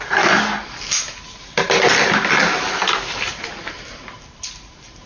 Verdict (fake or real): real